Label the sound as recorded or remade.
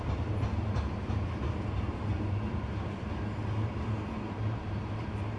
remade